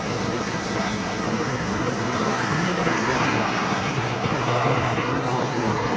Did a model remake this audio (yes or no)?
yes